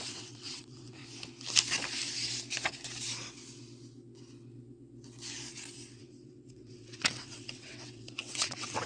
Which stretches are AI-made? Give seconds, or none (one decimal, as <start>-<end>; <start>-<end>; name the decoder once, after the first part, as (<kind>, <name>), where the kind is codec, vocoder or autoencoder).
0.0-1.0 (vocoder, WaveNeXt); 6.0-8.9